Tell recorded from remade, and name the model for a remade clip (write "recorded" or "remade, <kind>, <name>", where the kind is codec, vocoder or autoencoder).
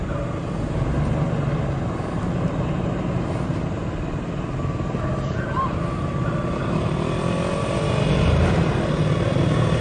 recorded